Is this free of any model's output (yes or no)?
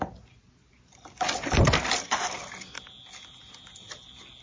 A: yes